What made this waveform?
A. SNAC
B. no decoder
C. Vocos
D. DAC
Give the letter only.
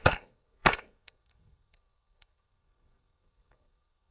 A